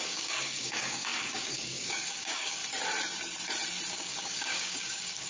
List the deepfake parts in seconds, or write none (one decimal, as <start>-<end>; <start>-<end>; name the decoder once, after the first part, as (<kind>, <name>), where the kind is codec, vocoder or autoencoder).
0.0-2.6 (codec, DAC); 3.9-5.3